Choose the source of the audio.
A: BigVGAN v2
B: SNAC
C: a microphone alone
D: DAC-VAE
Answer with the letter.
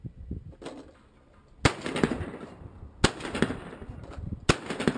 C